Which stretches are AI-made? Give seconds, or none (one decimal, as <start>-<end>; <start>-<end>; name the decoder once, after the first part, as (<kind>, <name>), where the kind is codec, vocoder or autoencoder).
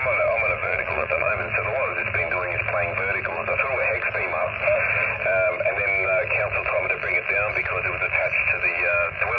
0.6-1.3 (vocoder, Vocos)